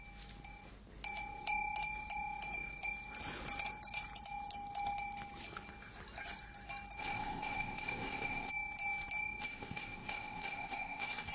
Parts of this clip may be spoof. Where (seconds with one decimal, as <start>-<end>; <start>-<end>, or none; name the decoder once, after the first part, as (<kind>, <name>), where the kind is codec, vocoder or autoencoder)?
7.0-8.5 (codec, ZipCodec); 9.4-11.3